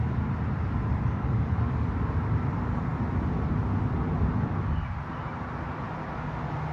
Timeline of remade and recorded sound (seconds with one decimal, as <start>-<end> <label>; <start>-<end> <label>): 0.0-0.9 recorded; 0.9-1.9 remade; 1.9-6.7 recorded